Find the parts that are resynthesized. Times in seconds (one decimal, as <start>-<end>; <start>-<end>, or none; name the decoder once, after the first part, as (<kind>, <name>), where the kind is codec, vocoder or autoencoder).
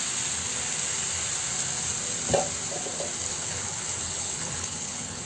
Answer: 3.3-5.3 (codec, HILCodec)